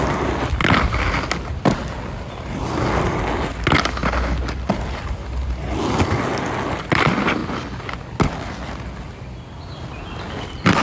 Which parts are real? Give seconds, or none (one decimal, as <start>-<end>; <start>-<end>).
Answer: 0.0-10.8